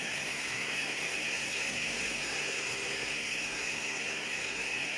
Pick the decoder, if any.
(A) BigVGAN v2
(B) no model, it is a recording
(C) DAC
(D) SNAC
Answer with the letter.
D